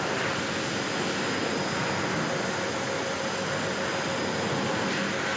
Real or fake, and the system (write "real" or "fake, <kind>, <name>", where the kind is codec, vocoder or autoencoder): real